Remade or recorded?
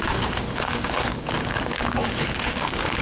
remade